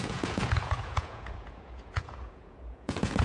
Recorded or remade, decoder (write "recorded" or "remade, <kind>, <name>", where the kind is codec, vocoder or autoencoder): remade, vocoder, Vocos